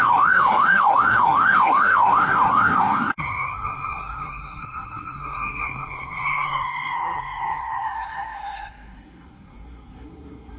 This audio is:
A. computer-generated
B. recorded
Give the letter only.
A